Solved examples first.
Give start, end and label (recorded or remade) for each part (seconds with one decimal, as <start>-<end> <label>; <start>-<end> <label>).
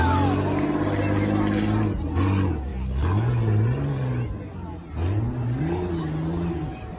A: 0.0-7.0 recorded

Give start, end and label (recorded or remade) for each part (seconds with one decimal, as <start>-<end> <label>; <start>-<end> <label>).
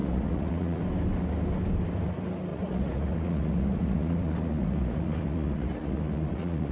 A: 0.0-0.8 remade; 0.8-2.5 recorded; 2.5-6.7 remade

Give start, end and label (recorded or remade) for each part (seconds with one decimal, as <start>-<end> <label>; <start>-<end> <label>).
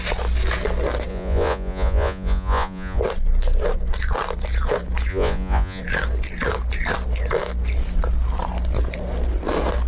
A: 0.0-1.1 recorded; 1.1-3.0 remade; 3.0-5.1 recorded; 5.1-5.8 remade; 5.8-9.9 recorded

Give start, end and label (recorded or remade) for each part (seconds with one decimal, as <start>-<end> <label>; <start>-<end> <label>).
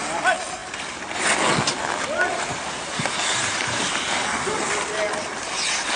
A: 0.0-6.0 recorded